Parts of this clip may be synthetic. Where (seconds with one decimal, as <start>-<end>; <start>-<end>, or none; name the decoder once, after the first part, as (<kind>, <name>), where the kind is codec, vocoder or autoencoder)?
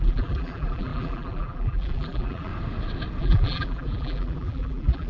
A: 0.0-2.5 (vocoder, BigVGAN v2); 3.2-5.1